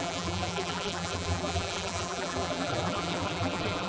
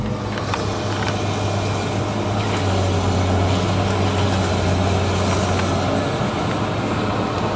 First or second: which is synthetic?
first